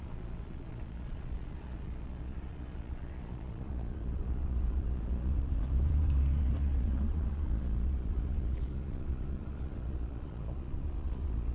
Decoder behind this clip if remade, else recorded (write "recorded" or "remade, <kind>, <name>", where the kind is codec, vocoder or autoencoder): remade, vocoder, Vocos